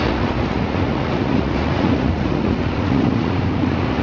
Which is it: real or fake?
fake